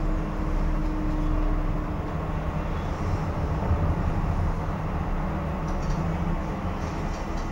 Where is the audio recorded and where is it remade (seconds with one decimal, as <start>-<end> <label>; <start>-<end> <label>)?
0.0-6.4 recorded; 6.4-7.0 remade; 7.0-7.5 recorded